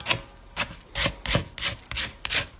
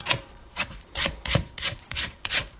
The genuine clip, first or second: first